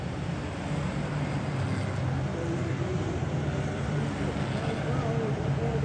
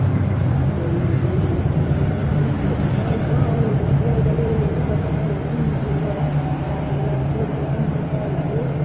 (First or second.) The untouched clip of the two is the first